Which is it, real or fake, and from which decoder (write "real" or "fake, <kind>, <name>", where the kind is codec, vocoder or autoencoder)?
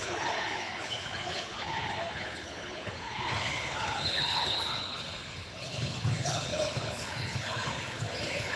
fake, codec, HILCodec